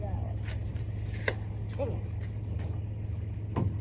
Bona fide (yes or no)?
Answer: yes